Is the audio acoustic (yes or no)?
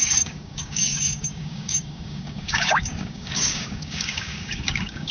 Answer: no